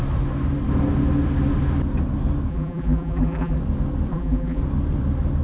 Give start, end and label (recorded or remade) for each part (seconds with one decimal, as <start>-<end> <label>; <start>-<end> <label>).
0.0-2.5 recorded; 2.5-3.6 remade; 3.6-4.1 recorded; 4.1-4.6 remade; 4.6-5.4 recorded